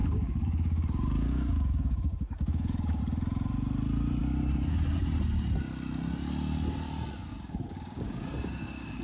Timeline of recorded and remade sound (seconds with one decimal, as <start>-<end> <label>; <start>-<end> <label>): 0.0-3.0 remade; 3.0-7.3 recorded; 7.3-9.0 remade